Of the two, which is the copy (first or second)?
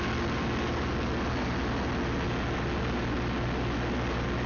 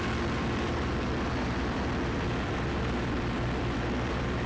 second